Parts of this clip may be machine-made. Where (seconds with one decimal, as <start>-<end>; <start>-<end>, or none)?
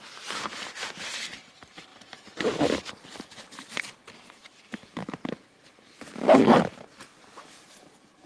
0.0-8.3